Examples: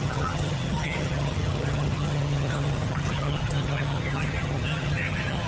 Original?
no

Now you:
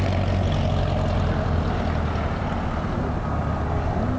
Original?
yes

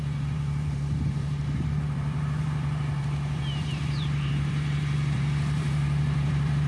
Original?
no